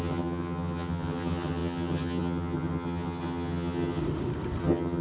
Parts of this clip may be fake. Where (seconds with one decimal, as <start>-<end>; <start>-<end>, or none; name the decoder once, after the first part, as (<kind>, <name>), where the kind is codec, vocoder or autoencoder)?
0.0-4.0 (vocoder, HiFi-GAN); 4.6-5.0

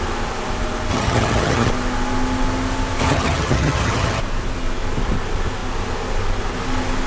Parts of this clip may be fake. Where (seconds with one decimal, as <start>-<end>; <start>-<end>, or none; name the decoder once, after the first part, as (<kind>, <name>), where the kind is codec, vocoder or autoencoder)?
0.9-1.7 (vocoder, HiFi-GAN); 3.0-4.2